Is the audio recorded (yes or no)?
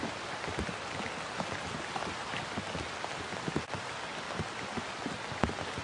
yes